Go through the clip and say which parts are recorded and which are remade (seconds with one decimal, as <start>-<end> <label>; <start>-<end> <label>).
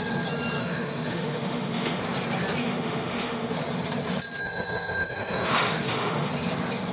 0.0-0.6 recorded; 0.6-2.0 remade; 2.0-2.6 recorded; 2.6-3.5 remade; 3.5-4.4 recorded; 4.4-6.3 remade; 6.3-6.9 recorded